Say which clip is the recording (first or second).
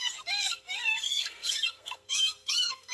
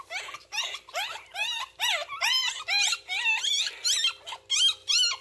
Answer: second